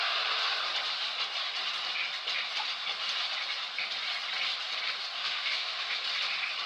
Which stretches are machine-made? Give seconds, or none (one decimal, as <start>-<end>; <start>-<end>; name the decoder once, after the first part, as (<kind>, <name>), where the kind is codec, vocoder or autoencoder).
5.2-5.9 (autoencoder, DAC-VAE)